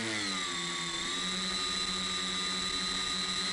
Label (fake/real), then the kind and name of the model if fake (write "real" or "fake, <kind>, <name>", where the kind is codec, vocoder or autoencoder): real